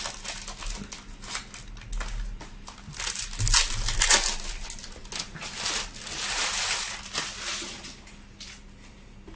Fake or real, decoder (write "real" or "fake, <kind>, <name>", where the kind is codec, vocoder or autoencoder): real